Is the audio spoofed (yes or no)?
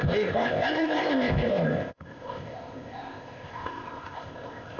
yes